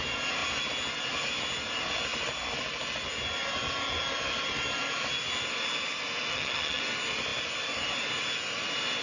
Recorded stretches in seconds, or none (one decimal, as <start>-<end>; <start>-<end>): 0.0-6.3; 6.8-9.0